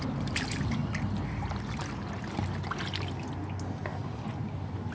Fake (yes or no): no